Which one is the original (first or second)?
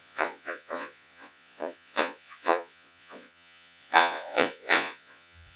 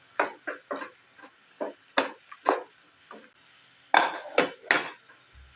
second